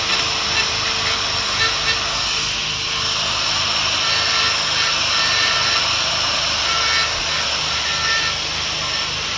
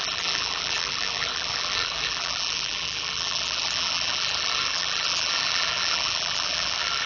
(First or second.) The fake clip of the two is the second